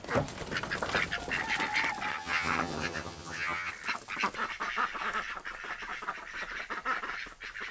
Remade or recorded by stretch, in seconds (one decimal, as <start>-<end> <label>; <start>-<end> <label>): 0.0-2.1 recorded; 2.1-3.7 remade; 3.7-7.7 recorded